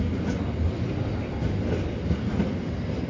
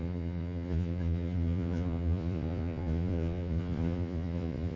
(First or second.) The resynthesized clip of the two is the second